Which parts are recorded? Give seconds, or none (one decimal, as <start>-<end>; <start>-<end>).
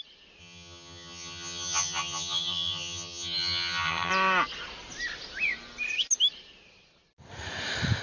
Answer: 0.0-0.4; 4.1-8.0